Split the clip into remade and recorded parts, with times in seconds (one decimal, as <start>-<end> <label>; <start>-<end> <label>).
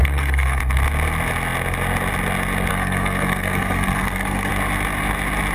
0.0-0.6 remade; 0.6-2.7 recorded; 2.7-4.5 remade; 4.5-5.5 recorded